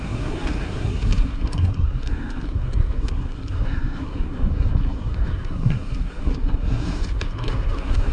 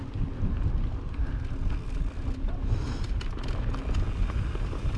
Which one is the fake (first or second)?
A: first